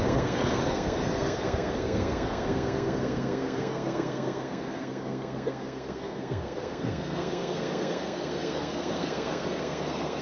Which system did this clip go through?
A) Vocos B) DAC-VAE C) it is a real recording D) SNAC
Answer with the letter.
D